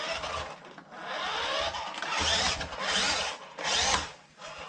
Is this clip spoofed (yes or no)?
no